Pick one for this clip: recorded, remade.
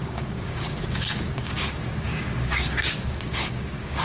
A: remade